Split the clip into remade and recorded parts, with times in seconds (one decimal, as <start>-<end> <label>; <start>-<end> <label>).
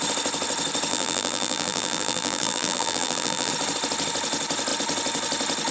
0.0-0.9 recorded; 0.9-3.5 remade; 3.5-5.7 recorded